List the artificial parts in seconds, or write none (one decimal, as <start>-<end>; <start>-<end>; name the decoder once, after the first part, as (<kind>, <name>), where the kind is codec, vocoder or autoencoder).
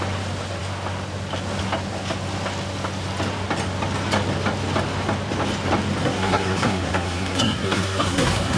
6.0-8.6 (codec, SNAC)